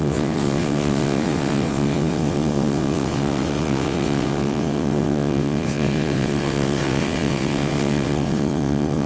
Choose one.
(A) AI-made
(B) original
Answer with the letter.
A